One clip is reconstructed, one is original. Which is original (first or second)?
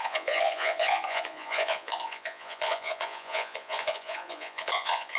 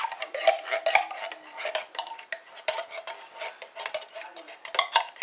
second